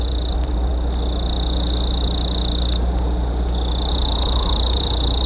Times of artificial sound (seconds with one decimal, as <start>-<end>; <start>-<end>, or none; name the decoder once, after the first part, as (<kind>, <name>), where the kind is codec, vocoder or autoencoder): 0.0-0.7 (vocoder, BigVGAN v2); 3.9-5.3